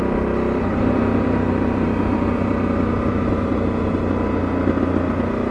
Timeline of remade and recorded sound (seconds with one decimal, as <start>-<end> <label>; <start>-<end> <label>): 0.0-0.7 recorded; 0.7-4.0 remade; 4.0-5.5 recorded

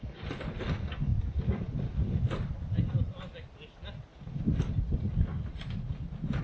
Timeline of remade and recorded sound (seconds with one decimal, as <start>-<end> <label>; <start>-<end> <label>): 0.0-1.1 recorded; 1.1-2.2 remade; 2.2-6.4 recorded

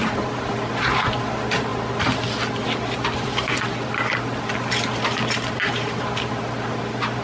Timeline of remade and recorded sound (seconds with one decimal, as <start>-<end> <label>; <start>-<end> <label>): 0.0-7.2 recorded